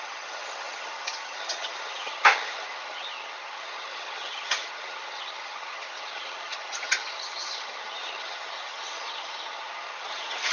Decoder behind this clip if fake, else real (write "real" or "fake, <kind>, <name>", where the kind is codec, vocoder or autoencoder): fake, vocoder, HiFi-GAN